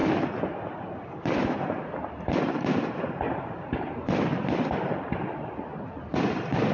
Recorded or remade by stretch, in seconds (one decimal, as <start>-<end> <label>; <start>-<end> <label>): 0.0-2.8 recorded; 2.8-6.7 remade

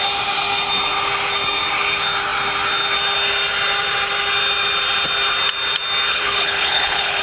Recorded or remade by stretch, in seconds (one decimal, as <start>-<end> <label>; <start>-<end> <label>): 0.0-6.1 recorded; 6.1-7.2 remade

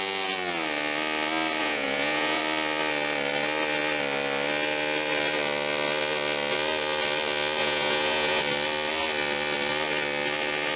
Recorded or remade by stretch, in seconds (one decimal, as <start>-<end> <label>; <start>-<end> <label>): 0.0-1.6 recorded; 1.6-2.4 remade; 2.4-7.6 recorded; 7.6-8.4 remade; 8.4-10.8 recorded

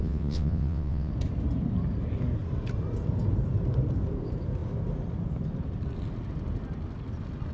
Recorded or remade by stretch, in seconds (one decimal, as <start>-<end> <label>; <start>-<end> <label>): 0.0-1.1 remade; 1.1-7.5 recorded

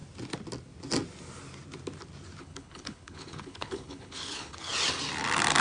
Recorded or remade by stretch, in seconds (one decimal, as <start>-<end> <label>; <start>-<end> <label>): 0.0-2.4 recorded; 2.4-4.7 remade; 4.7-5.6 recorded